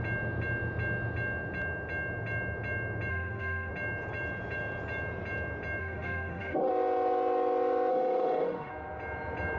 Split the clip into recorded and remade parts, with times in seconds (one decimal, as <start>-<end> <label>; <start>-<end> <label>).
0.0-3.1 recorded; 3.1-3.7 remade; 3.7-5.8 recorded; 5.8-6.7 remade; 6.7-7.9 recorded; 7.9-8.7 remade; 8.7-9.6 recorded